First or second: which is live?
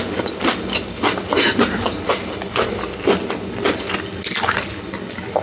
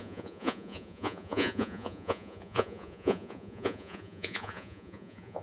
first